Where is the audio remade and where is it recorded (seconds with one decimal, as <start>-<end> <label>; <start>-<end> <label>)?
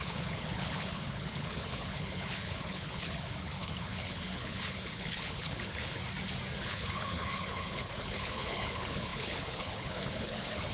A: 0.0-6.0 remade; 6.0-6.6 recorded; 6.6-10.7 remade